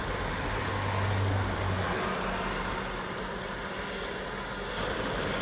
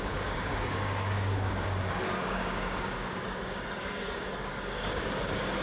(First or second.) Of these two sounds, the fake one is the second